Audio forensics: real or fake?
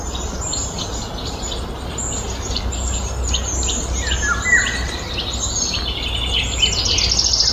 real